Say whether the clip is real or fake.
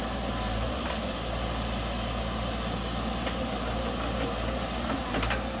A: real